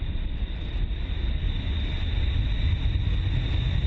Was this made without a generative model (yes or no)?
yes